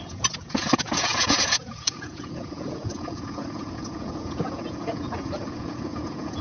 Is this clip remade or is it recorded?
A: remade